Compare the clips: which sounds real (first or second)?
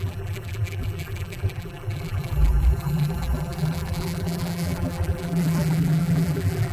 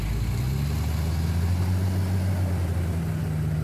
second